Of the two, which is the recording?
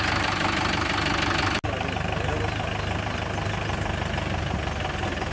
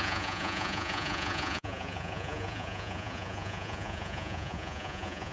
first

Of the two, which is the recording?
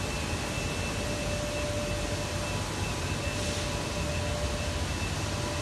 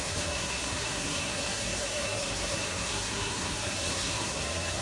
first